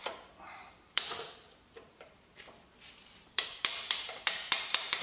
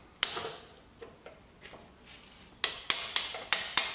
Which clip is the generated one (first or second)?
first